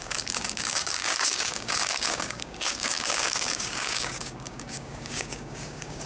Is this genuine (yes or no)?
no